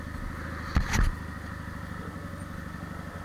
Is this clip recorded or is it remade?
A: recorded